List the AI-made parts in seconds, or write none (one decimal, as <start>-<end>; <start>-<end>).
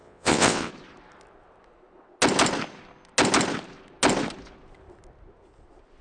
0.0-0.7